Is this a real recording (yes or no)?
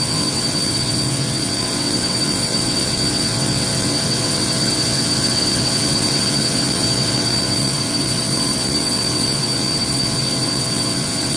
no